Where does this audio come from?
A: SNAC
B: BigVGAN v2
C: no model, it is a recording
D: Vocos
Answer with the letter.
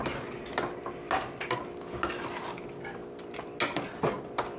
C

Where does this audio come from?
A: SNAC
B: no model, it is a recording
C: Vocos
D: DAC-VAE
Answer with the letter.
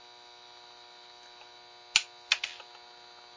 B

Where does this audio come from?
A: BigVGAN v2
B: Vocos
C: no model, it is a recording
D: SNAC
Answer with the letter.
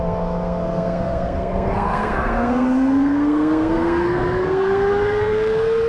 D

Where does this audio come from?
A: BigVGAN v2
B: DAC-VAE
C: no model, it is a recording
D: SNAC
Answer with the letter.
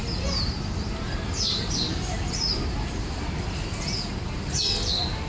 C